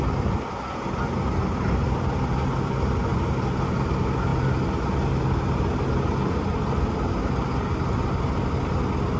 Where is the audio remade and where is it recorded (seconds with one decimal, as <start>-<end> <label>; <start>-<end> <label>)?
0.0-9.2 recorded